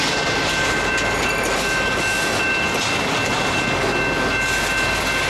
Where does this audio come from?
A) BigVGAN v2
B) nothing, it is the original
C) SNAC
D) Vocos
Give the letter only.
B